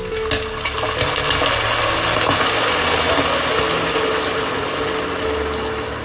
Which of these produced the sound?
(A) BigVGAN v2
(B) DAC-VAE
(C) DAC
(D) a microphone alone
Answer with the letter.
D